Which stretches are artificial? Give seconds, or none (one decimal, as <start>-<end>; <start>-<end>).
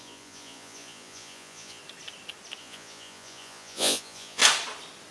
0.0-1.8; 2.6-4.4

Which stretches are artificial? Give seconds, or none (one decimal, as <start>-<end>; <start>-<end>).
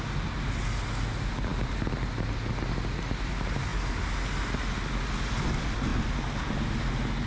none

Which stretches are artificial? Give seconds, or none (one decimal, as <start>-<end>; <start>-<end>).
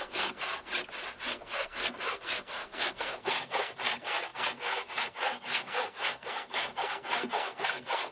0.0-0.7; 1.3-8.1